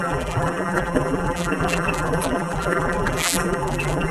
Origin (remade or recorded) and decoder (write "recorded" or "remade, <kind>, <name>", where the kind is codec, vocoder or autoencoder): remade, vocoder, BigVGAN v2